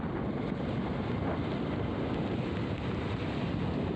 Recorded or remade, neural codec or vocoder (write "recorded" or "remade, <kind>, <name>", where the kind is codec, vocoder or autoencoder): recorded